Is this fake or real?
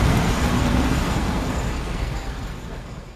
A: fake